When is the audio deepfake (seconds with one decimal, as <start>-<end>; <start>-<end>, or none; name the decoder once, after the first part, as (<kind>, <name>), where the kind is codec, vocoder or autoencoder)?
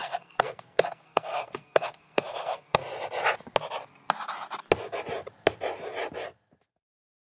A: 0.0-2.8 (codec, SNAC); 6.7-7.2